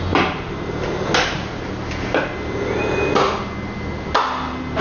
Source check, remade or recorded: recorded